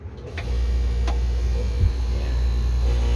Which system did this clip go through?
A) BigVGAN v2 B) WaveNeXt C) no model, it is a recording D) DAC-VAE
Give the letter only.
C